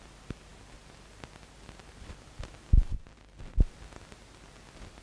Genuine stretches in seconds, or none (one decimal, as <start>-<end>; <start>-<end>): 0.0-5.0